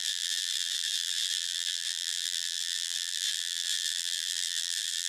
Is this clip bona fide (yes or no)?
no